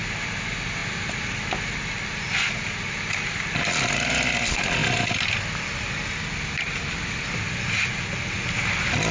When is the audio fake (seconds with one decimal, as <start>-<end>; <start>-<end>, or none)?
none